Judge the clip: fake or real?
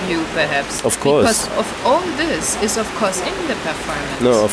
real